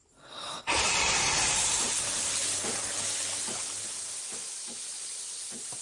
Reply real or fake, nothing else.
fake